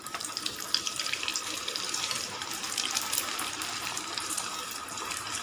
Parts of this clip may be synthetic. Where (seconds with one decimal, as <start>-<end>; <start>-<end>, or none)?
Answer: 0.0-5.4